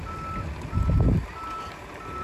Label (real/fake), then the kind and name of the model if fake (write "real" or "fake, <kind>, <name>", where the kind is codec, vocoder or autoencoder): real